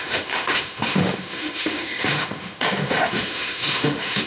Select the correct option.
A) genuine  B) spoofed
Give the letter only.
B